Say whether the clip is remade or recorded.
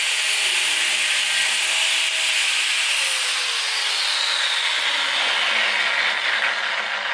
recorded